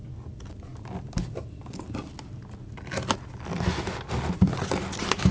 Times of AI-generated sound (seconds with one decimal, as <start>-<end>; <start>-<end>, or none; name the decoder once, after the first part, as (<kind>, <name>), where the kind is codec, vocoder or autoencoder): none

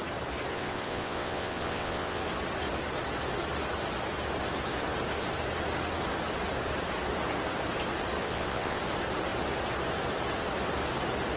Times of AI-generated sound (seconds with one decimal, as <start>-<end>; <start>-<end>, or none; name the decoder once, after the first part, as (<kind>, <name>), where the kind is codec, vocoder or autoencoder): 0.5-2.2 (vocoder, WaveNeXt); 8.2-8.8

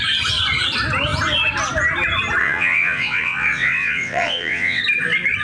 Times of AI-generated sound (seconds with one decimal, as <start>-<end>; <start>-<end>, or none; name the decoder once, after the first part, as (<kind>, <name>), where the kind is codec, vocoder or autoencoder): 2.4-4.8 (vocoder, WaveNeXt)

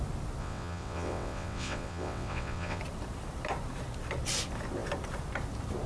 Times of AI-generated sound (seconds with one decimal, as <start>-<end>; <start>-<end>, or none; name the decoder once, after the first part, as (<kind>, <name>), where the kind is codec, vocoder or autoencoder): 0.4-2.8 (vocoder, WaveNeXt)

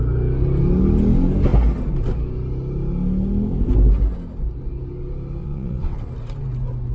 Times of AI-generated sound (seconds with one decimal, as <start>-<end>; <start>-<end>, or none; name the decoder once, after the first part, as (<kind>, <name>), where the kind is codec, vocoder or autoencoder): 5.4-6.1 (vocoder, WaveNeXt)

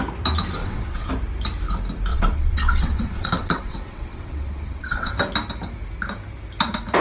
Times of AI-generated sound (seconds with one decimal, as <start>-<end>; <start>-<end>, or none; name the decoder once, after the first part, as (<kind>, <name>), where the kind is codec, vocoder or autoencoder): 0.6-1.1 (vocoder, WaveNeXt); 2.1-5.1

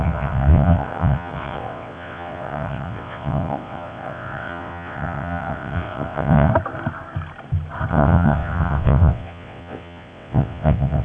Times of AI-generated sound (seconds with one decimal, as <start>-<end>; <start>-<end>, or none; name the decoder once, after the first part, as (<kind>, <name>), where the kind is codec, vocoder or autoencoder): 0.0-6.5 (vocoder, WaveNeXt); 7.9-11.0